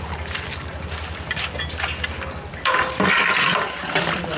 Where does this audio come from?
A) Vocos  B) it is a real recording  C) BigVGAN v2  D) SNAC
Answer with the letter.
B